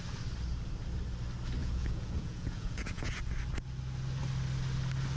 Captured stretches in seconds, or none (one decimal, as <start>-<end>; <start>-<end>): 0.0-1.6; 3.2-5.2